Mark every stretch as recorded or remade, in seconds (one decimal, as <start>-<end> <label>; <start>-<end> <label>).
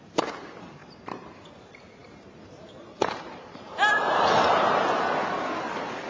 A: 0.0-0.8 recorded; 0.8-1.4 remade; 1.4-2.0 recorded; 2.0-4.8 remade; 4.8-6.1 recorded